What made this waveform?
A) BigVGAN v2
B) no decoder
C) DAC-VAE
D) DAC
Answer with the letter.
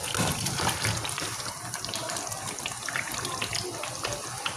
B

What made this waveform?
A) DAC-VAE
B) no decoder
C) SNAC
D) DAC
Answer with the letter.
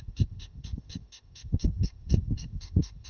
A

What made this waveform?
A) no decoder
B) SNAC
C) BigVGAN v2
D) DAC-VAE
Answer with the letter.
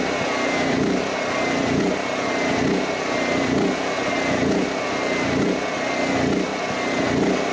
A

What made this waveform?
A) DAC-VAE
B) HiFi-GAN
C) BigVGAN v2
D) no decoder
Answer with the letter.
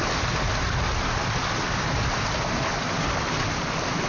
D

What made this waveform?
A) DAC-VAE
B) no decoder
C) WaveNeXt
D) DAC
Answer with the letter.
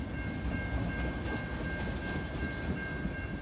B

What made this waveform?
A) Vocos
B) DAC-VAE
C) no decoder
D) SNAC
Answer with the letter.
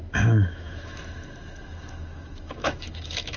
B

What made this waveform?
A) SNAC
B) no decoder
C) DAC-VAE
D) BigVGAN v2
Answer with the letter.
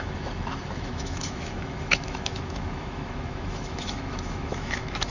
C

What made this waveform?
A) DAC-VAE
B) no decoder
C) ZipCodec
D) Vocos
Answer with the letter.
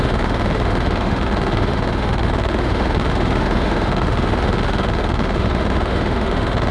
A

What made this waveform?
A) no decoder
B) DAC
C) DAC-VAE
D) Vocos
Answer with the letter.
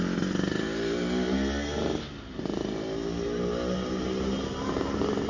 A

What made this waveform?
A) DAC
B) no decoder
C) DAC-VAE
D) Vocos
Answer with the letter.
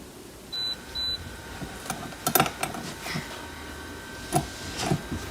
B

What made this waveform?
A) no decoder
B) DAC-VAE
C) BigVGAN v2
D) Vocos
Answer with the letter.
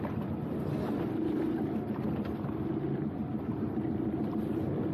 A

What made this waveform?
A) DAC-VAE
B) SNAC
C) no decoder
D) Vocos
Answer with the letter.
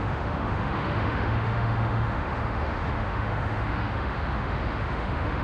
A